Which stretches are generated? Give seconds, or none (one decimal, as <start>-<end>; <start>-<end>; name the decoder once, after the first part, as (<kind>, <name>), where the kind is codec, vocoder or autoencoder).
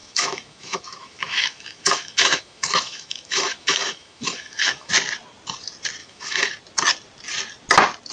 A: 0.0-4.9 (autoencoder, DAC-VAE); 6.0-6.5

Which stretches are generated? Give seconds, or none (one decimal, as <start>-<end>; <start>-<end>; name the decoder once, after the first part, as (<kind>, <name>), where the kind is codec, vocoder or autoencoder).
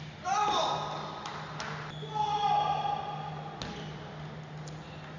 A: none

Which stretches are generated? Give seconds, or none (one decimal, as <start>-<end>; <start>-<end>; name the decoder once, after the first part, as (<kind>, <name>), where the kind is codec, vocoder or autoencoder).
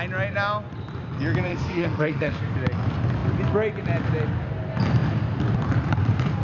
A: 1.5-2.5 (autoencoder, DAC-VAE)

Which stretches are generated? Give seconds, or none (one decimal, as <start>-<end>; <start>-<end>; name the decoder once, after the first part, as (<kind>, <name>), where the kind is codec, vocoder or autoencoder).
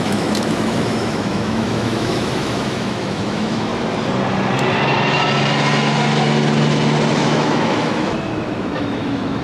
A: 0.0-3.7 (autoencoder, DAC-VAE); 7.1-9.4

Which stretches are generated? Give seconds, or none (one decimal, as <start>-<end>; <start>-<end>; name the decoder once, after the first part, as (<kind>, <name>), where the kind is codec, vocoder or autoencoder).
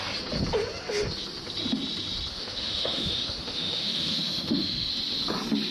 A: 2.3-4.9 (autoencoder, DAC-VAE)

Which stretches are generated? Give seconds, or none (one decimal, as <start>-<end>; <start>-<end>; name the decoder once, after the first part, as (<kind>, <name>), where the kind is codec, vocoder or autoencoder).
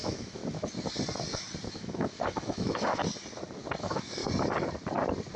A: 0.0-0.4 (autoencoder, DAC-VAE); 1.7-3.0; 3.8-4.2